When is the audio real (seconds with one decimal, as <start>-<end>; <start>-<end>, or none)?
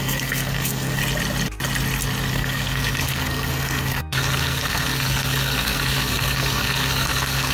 1.0-2.3